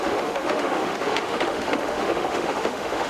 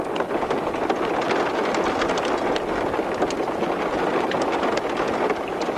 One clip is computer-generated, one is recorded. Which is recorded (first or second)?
second